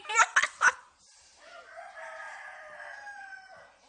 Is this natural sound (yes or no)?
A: yes